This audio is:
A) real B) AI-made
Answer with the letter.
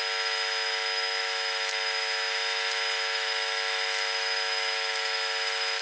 B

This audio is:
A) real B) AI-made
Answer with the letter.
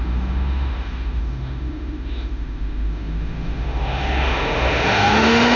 B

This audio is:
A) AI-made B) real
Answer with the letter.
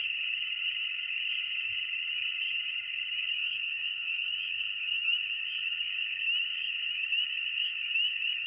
A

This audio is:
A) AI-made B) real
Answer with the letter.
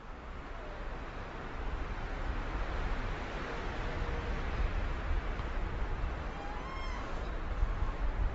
B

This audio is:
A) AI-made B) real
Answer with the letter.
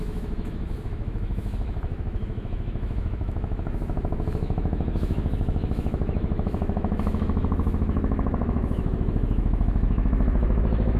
A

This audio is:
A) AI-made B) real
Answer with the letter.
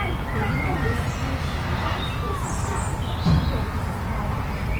B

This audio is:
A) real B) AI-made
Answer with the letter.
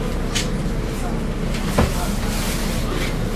A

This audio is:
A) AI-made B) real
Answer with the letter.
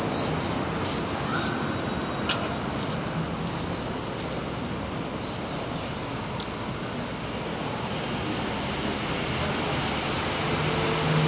B